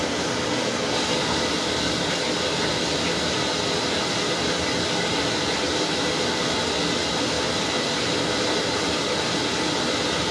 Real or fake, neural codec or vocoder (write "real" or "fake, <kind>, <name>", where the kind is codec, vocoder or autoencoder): real